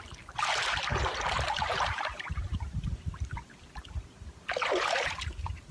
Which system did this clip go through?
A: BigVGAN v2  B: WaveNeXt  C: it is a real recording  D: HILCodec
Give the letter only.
C